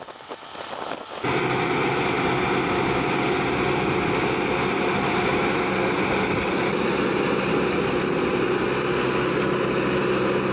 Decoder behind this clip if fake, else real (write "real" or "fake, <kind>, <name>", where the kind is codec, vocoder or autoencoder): real